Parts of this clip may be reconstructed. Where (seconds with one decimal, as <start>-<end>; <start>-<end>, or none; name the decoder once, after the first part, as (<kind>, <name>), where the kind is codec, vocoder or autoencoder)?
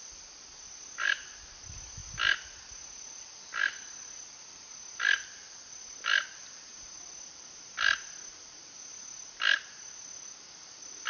none